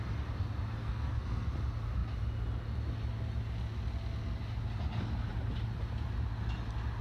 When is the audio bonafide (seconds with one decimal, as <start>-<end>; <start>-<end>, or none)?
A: 0.0-0.8; 1.5-7.0